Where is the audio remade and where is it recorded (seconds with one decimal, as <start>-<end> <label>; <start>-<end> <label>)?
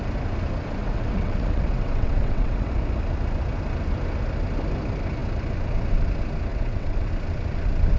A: 0.0-0.8 recorded; 0.8-2.7 remade; 2.7-6.5 recorded; 6.5-7.1 remade; 7.1-8.0 recorded